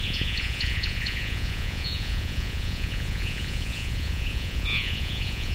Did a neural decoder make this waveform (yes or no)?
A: yes